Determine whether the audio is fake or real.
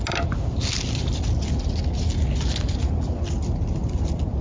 real